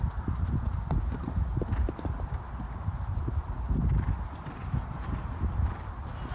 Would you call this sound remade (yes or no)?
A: no